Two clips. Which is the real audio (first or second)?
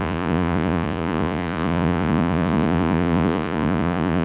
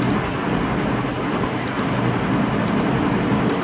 second